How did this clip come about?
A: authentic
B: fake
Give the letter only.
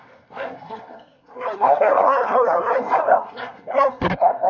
B